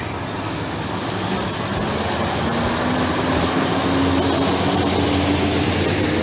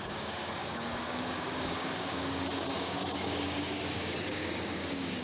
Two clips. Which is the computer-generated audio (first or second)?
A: second